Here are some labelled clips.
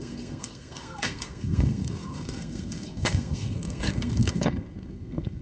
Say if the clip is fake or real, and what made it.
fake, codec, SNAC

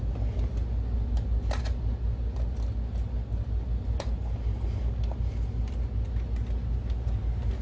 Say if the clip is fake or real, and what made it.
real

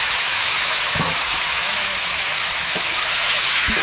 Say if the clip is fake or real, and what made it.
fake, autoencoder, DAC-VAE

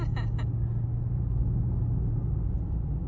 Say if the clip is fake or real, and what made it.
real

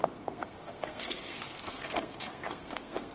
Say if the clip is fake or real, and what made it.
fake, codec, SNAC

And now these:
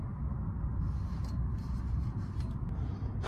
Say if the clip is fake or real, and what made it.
real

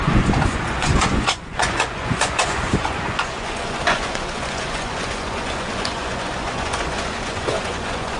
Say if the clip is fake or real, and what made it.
fake, vocoder, Vocos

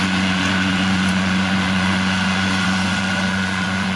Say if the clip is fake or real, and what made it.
fake, vocoder, Vocos